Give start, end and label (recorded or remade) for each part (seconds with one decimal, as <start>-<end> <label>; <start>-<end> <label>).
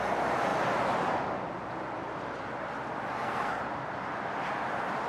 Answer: 0.0-3.1 recorded; 3.1-3.6 remade; 3.6-5.1 recorded